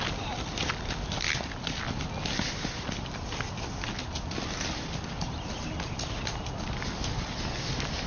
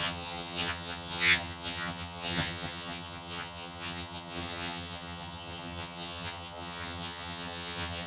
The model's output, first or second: second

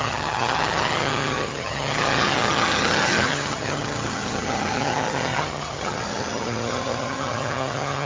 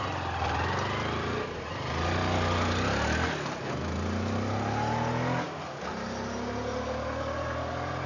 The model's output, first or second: first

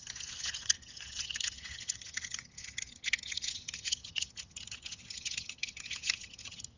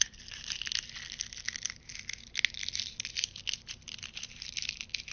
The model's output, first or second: first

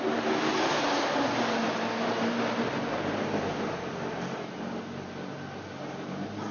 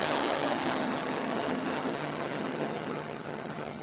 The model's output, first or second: second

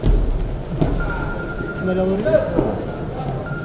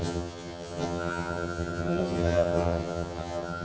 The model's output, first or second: second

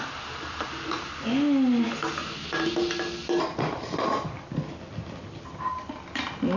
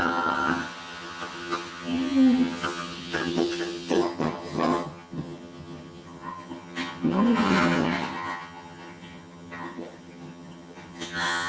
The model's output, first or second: second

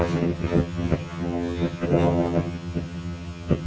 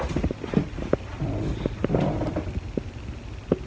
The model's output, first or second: first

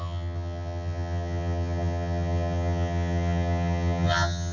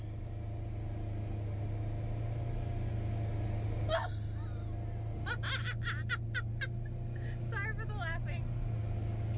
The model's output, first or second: first